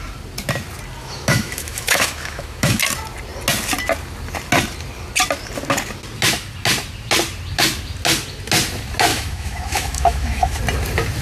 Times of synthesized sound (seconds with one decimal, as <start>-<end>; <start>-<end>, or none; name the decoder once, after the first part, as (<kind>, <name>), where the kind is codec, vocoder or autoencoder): 1.0-2.8 (autoencoder, DAC-VAE); 9.1-10.6